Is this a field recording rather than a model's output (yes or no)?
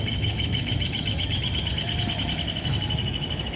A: no